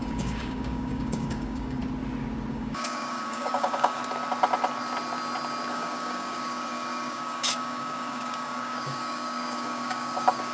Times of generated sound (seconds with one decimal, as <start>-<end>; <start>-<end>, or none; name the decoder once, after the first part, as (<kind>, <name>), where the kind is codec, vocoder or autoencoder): 0.0-1.8 (codec, DAC); 2.5-4.0; 5.7-10.5